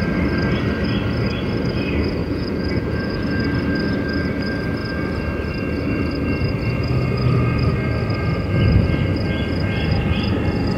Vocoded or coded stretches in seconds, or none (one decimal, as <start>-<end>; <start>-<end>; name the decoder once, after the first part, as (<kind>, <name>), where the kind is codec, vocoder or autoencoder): 2.2-3.2 (vocoder, Vocos)